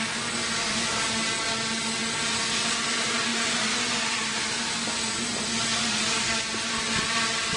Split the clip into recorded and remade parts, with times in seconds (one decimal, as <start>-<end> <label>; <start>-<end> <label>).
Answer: 0.0-7.6 recorded

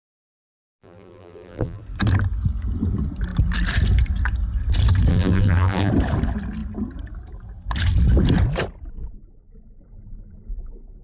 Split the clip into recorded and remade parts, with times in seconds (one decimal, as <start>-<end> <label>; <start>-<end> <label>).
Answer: 0.0-0.5 recorded; 0.5-1.8 remade; 1.8-5.1 recorded; 5.1-5.9 remade; 5.9-11.0 recorded

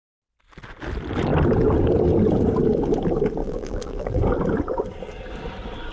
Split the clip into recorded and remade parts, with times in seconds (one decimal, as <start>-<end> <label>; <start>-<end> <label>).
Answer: 0.0-3.4 recorded; 3.4-4.2 remade; 4.2-5.9 recorded

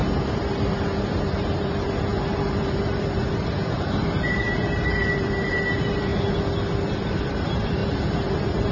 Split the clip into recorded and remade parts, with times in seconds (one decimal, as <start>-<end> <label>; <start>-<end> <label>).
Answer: 0.0-6.1 remade; 6.1-6.9 recorded; 6.9-8.7 remade

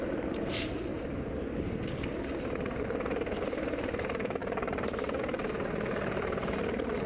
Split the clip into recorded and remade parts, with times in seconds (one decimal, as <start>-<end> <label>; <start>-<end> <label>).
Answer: 0.0-0.9 remade; 0.9-2.8 recorded; 2.8-7.1 remade